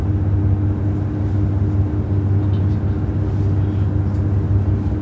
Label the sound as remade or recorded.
recorded